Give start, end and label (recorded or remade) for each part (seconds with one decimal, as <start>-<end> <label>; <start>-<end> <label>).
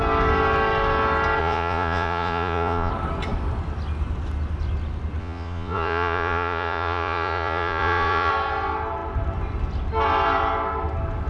0.0-1.4 recorded; 1.4-2.9 remade; 2.9-5.2 recorded; 5.2-8.3 remade; 8.3-11.3 recorded